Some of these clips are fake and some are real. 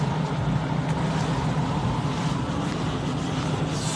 real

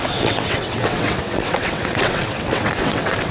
fake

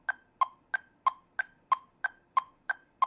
real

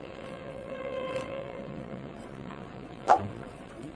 fake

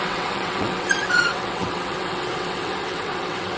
fake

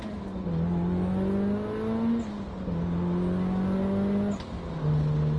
real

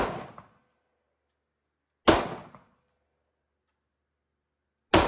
real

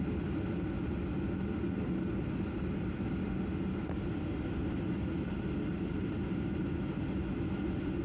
real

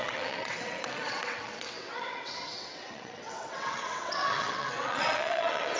fake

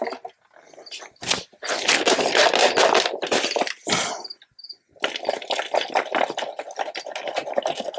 real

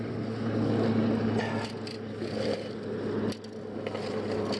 real